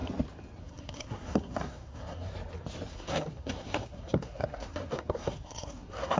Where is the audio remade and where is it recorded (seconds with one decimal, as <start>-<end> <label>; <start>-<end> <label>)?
0.0-0.6 recorded; 0.6-2.3 remade; 2.3-2.9 recorded; 2.9-6.2 remade

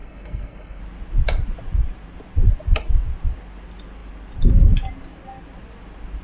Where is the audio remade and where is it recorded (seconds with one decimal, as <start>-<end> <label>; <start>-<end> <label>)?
0.0-0.8 remade; 0.8-6.2 recorded